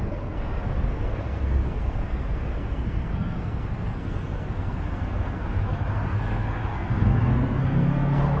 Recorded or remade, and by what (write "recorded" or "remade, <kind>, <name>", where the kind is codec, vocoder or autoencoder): remade, codec, SNAC